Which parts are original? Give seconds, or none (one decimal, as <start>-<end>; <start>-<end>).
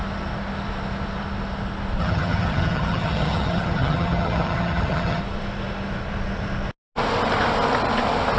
0.0-2.0; 5.2-8.4